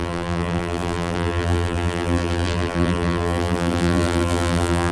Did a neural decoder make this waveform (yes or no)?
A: yes